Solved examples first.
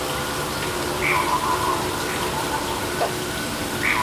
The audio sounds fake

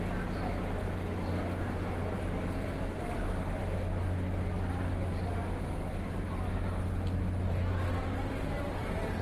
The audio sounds real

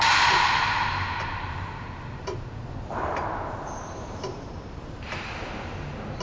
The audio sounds fake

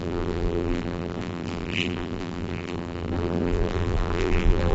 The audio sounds fake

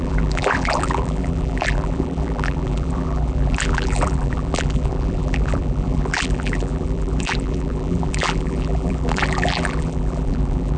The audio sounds fake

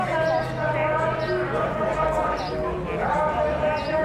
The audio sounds real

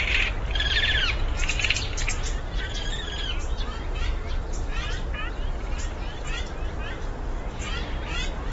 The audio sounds real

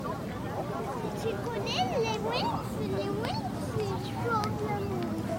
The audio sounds real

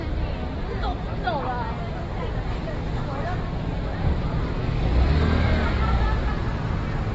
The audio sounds real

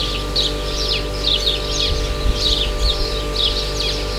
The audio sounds real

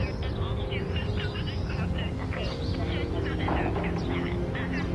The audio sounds real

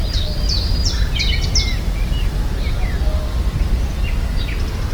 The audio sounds real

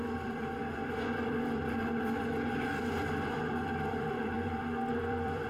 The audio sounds fake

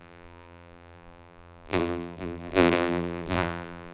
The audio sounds fake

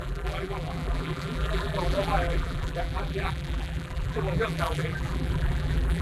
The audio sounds fake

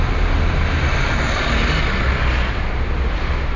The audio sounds real